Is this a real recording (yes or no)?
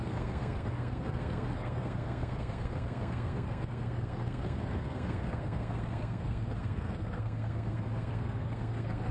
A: no